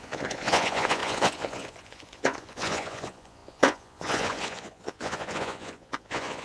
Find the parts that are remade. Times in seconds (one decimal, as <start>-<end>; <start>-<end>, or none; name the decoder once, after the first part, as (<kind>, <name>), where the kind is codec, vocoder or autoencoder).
0.0-6.4 (vocoder, Vocos)